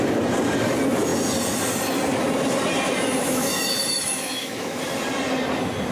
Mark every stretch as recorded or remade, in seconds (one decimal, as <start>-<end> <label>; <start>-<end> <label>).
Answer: 0.0-3.2 recorded; 3.2-4.8 remade; 4.8-5.9 recorded